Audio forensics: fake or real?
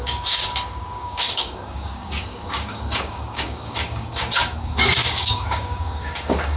fake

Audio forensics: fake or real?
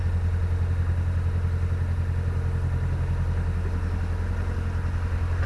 real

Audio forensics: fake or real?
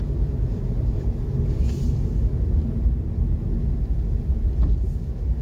real